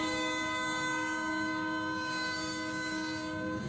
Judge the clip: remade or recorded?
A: remade